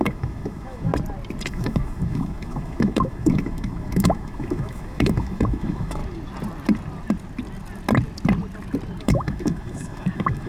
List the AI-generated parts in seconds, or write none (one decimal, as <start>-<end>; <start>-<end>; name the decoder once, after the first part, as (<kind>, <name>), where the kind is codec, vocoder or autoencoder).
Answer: 0.0-0.9 (autoencoder, DAC-VAE); 1.5-6.0; 9.0-10.5